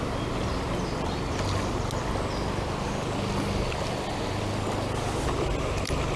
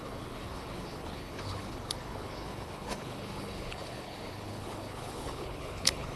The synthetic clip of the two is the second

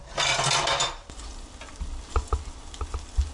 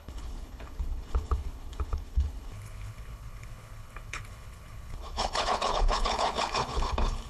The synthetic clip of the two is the second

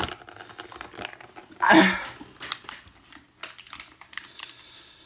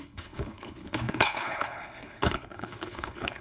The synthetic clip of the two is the second